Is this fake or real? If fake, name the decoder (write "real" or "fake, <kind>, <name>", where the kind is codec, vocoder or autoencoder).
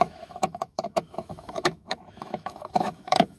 fake, autoencoder, DAC-VAE